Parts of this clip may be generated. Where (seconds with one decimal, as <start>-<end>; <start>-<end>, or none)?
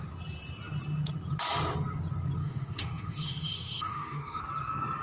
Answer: 2.4-4.4